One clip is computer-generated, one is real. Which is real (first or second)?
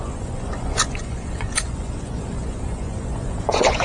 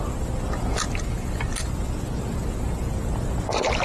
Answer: second